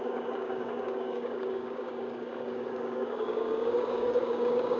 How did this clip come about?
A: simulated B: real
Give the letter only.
A